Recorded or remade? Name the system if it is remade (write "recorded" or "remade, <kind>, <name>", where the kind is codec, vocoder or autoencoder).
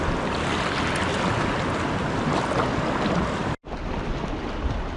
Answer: recorded